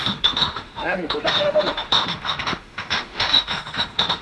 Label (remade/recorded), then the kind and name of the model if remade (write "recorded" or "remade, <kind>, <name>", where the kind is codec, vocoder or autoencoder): remade, autoencoder, DAC-VAE